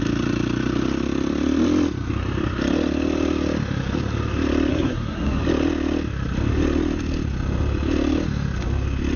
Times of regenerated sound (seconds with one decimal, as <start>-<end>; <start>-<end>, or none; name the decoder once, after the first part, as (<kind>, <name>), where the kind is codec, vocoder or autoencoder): 4.7-5.4 (codec, SNAC)